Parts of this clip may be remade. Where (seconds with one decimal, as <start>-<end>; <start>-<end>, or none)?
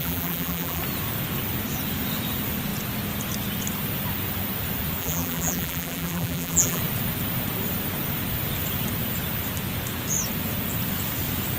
0.0-0.8; 5.0-6.8